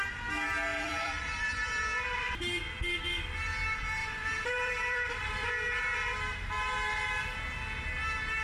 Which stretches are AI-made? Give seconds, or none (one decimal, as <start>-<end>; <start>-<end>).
0.7-2.4; 4.0-5.5